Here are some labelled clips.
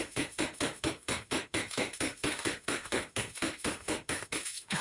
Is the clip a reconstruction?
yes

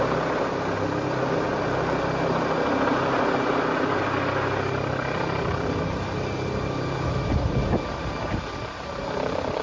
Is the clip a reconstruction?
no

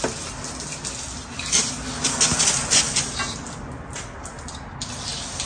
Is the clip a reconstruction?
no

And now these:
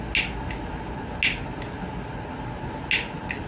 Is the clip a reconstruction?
no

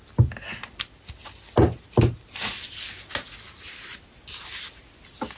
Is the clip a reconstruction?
no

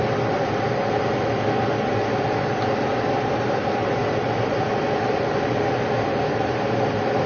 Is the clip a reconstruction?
no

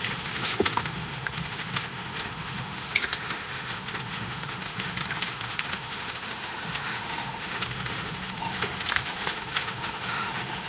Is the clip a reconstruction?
yes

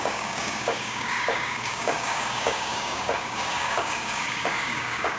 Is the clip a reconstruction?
yes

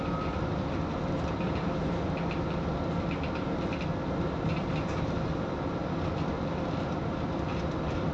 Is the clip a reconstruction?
no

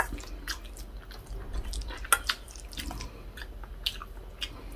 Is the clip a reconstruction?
no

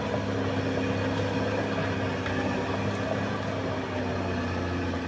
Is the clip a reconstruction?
no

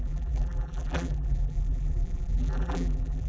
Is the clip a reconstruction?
yes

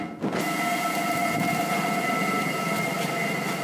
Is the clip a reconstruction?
no